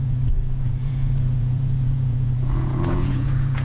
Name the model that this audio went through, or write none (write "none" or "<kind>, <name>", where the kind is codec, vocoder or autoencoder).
vocoder, Vocos